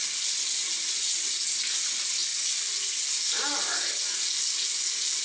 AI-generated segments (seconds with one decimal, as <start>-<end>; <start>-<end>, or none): none